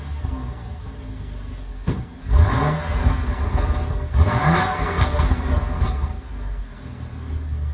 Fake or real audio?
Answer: fake